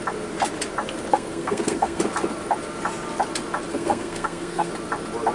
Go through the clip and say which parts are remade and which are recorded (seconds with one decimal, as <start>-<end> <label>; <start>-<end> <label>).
0.0-1.1 recorded; 1.1-2.0 remade; 2.0-3.7 recorded; 3.7-4.7 remade; 4.7-5.3 recorded